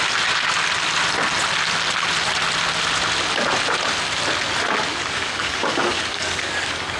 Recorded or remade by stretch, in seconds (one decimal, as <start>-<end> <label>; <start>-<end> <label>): 0.0-4.9 recorded; 4.9-7.0 remade

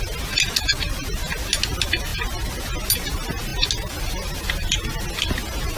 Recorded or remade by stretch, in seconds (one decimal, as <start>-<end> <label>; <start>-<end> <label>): 0.0-5.8 recorded

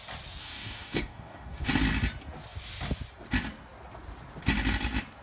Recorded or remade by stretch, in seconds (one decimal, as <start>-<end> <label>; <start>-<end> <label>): 0.0-0.4 recorded; 0.4-1.7 remade; 1.7-5.2 recorded

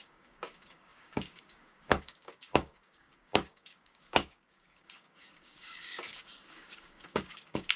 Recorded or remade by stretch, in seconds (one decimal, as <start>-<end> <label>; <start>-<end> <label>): 0.0-7.8 remade

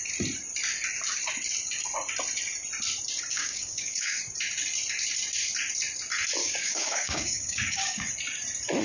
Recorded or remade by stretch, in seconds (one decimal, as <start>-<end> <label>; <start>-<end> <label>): 0.0-3.3 recorded; 3.3-4.2 remade; 4.2-6.4 recorded; 6.4-8.1 remade; 8.1-8.8 recorded

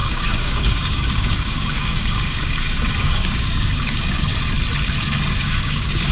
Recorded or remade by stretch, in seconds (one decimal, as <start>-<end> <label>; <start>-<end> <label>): 0.0-4.3 remade; 4.3-5.4 recorded; 5.4-6.1 remade

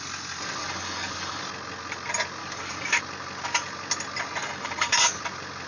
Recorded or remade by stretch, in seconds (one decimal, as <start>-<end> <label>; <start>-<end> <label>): 0.0-0.6 recorded; 0.6-1.4 remade; 1.4-2.4 recorded; 2.4-3.0 remade; 3.0-4.4 recorded; 4.4-5.2 remade; 5.2-5.7 recorded

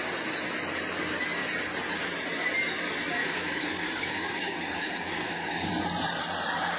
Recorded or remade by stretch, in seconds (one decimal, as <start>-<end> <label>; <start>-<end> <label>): 0.0-3.2 recorded; 3.2-5.7 remade; 5.7-6.8 recorded